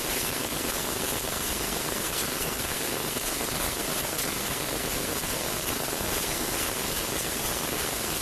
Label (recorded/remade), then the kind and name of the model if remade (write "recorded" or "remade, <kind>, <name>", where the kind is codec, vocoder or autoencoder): remade, codec, SNAC